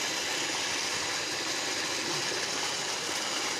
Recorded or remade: recorded